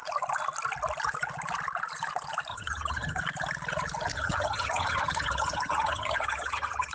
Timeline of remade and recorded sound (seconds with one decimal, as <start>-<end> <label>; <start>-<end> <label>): 0.0-2.5 recorded; 2.5-3.2 remade; 3.2-4.1 recorded; 4.1-6.9 remade